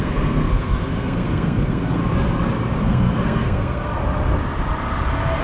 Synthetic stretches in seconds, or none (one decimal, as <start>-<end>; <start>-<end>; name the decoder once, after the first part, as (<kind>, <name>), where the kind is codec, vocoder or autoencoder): 0.0-2.0 (codec, SNAC); 2.8-4.0